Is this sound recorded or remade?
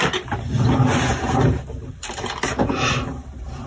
recorded